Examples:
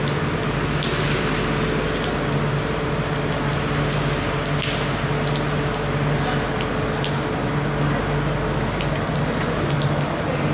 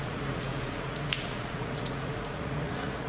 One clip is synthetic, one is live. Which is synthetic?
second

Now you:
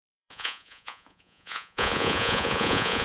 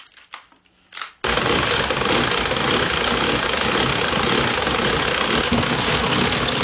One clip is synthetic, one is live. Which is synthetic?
first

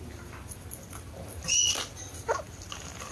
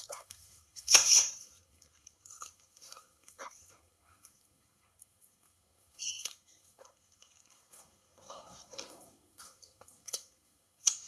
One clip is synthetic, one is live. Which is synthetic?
second